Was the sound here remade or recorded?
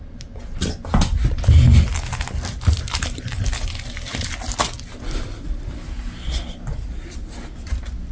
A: recorded